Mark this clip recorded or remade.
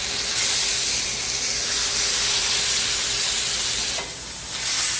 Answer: recorded